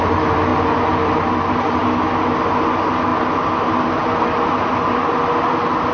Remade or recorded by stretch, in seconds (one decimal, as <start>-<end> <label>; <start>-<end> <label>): 0.0-5.9 recorded